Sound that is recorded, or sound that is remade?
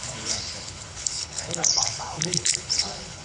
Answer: remade